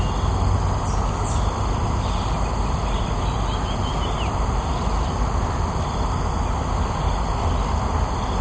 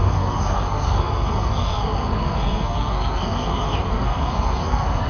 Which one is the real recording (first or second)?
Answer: first